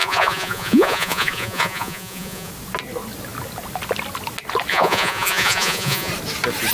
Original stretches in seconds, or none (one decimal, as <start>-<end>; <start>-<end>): 2.5-4.7; 6.1-6.7